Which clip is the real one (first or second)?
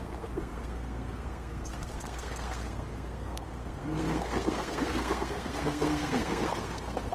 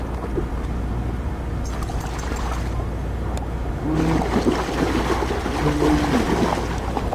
second